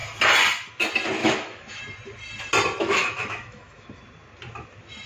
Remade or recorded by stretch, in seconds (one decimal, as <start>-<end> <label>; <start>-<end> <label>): 0.0-1.2 recorded; 1.2-1.8 remade; 1.8-2.8 recorded; 2.8-4.0 remade; 4.0-5.1 recorded